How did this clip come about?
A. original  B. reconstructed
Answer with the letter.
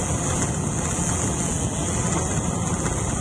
A